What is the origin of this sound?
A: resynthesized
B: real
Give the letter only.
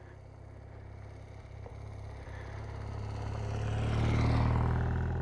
B